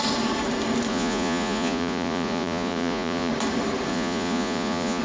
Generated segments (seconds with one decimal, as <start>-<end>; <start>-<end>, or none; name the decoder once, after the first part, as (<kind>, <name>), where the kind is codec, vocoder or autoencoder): 0.9-3.3 (vocoder, Vocos); 3.9-5.0